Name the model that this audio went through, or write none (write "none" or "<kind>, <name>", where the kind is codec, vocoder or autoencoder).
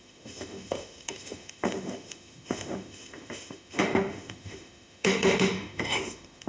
autoencoder, DAC-VAE